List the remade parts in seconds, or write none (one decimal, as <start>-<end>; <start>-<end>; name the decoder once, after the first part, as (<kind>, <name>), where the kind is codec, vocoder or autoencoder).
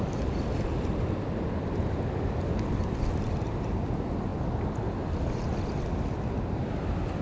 none